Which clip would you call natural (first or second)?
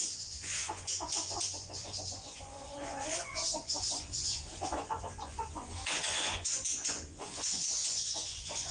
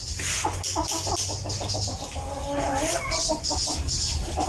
second